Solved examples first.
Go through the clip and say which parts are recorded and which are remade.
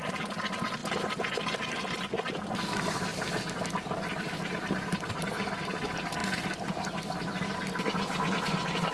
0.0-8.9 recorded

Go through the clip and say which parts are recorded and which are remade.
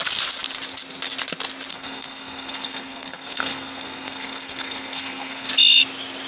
0.0-1.7 recorded; 1.7-5.5 remade; 5.5-6.3 recorded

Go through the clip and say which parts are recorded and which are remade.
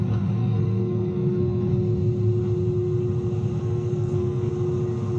0.0-0.4 recorded; 0.4-1.7 remade; 1.7-3.6 recorded; 3.6-4.5 remade; 4.5-5.2 recorded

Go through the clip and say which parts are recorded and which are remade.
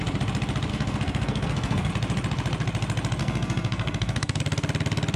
0.0-0.7 recorded; 0.7-1.9 remade; 1.9-3.2 recorded; 3.2-4.4 remade; 4.4-5.2 recorded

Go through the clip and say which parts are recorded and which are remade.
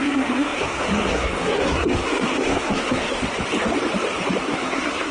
0.0-3.2 remade; 3.2-4.4 recorded; 4.4-5.1 remade